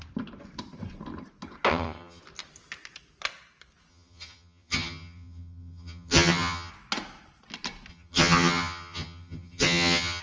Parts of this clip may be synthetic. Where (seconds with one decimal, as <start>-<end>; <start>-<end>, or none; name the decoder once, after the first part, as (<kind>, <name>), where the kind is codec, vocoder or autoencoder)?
1.7-2.2 (vocoder, HiFi-GAN); 3.9-6.7; 7.9-10.2